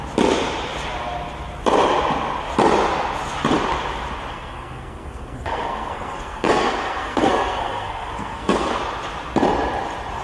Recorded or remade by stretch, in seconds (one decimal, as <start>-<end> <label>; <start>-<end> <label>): 0.0-4.3 recorded; 4.3-8.8 remade; 8.8-10.2 recorded